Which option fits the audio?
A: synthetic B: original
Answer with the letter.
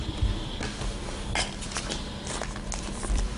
B